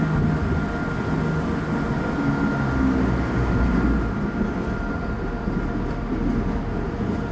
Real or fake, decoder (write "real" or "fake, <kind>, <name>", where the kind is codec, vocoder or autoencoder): real